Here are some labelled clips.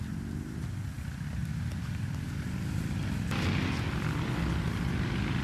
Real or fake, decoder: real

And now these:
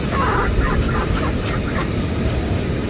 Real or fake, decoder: real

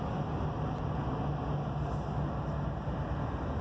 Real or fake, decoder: real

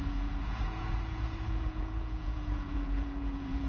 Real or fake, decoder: fake, vocoder, Vocos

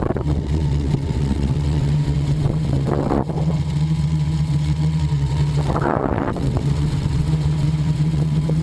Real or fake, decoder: fake, vocoder, WaveNeXt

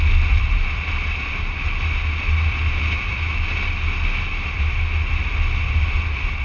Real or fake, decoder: real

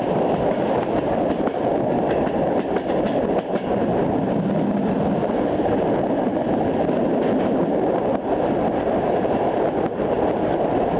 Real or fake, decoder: real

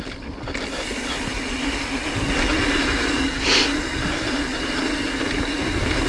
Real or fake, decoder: real